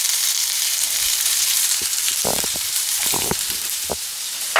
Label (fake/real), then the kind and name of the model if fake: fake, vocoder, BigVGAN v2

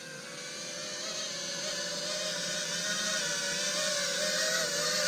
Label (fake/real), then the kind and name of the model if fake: real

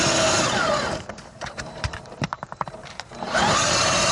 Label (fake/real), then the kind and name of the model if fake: fake, vocoder, BigVGAN v2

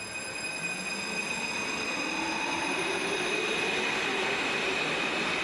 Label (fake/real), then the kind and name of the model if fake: real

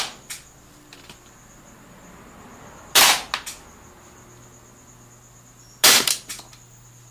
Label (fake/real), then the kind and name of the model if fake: real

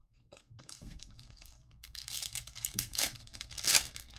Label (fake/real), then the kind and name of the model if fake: fake, codec, SNAC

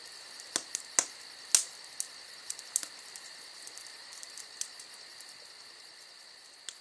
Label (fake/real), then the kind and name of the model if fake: real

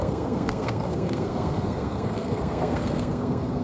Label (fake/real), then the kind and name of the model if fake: fake, codec, SNAC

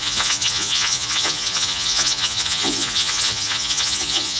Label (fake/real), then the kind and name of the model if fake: fake, vocoder, Vocos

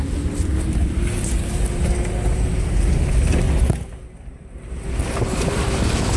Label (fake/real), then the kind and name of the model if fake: real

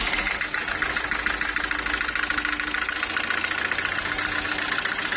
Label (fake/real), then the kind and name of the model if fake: real